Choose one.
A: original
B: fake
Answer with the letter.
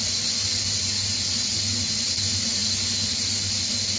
A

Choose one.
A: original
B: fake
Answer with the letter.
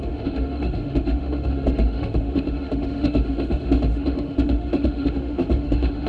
B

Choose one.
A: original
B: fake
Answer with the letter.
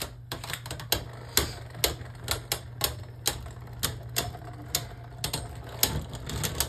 A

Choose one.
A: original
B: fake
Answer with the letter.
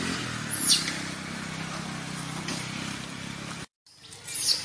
A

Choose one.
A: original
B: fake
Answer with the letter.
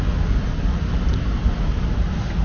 A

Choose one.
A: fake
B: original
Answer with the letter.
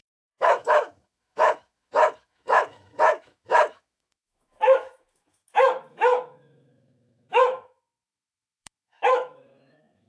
A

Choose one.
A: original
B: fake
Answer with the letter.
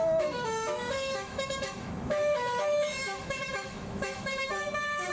B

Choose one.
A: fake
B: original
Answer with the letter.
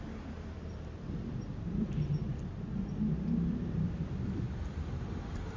B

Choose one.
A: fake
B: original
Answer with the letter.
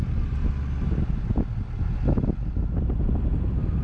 B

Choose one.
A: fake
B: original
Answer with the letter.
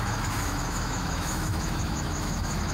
A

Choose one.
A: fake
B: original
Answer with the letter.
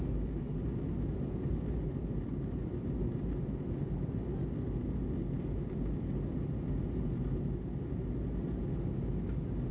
B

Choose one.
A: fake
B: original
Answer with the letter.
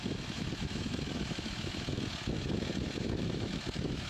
A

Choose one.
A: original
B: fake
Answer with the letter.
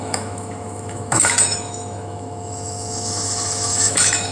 B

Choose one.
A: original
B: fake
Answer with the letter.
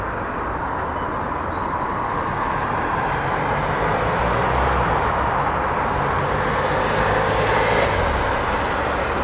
A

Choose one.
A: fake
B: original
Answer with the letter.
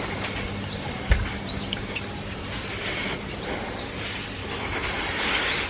B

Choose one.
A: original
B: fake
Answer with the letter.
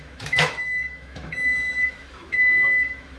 B